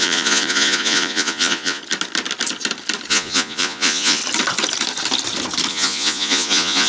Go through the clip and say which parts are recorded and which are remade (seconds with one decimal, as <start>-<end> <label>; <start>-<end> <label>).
0.0-1.8 remade; 1.8-3.1 recorded; 3.1-4.2 remade; 4.2-5.7 recorded; 5.7-6.9 remade